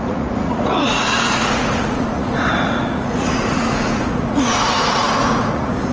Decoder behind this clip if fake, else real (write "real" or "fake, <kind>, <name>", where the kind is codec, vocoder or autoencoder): fake, vocoder, Vocos